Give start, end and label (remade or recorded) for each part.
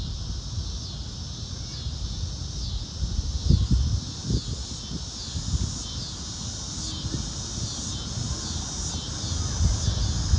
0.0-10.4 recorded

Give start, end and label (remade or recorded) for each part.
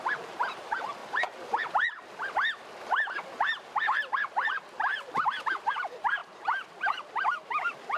0.0-1.0 remade; 1.0-5.7 recorded; 5.7-6.2 remade; 6.2-7.5 recorded; 7.5-8.0 remade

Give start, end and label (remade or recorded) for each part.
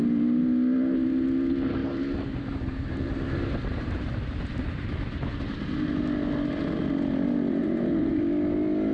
0.0-1.8 recorded; 1.8-5.4 remade; 5.4-7.6 recorded; 7.6-8.1 remade; 8.1-8.9 recorded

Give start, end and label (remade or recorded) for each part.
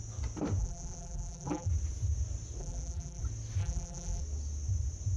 0.0-0.6 recorded; 0.6-1.7 remade; 1.7-2.6 recorded; 2.6-3.2 remade; 3.2-3.6 recorded; 3.6-4.2 remade; 4.2-5.2 recorded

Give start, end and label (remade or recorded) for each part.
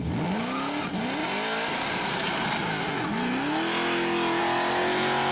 0.0-5.3 recorded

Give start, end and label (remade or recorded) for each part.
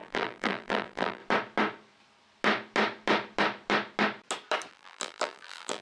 0.0-1.2 remade; 1.2-4.7 recorded; 4.7-5.8 remade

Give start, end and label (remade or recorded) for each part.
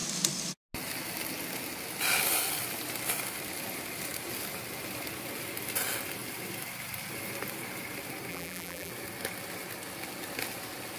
0.0-8.3 recorded; 8.3-8.9 remade; 8.9-11.0 recorded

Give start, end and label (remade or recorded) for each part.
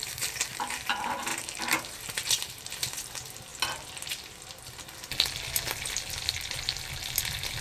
0.0-0.9 remade; 0.9-1.3 recorded; 1.3-2.4 remade; 2.4-7.6 recorded